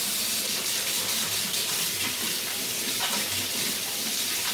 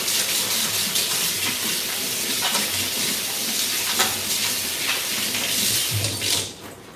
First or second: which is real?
second